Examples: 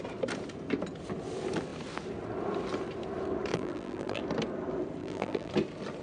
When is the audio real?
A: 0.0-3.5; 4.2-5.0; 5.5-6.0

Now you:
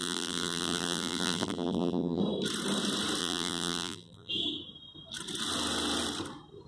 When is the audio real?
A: 2.2-3.2; 4.3-6.7

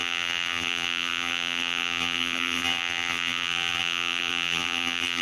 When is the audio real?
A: none

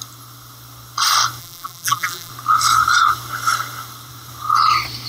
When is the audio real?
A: 0.0-1.4; 2.3-5.1

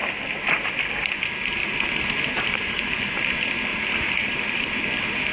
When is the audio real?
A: 0.9-1.6; 3.2-3.7; 4.8-5.3